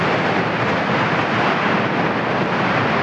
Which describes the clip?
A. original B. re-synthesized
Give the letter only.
A